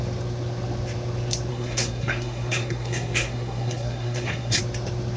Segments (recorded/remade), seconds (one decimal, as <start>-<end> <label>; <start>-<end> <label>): 0.0-1.5 recorded; 1.5-4.6 remade; 4.6-5.2 recorded